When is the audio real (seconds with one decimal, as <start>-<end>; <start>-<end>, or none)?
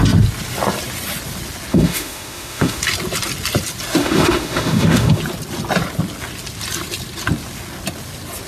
0.0-1.7; 2.8-4.0; 5.2-8.5